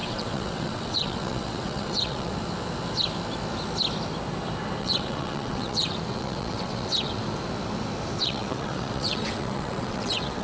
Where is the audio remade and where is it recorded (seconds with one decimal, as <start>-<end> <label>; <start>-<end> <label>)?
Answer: 0.0-2.3 remade; 2.3-4.8 recorded; 4.8-7.2 remade; 7.2-8.2 recorded; 8.2-10.4 remade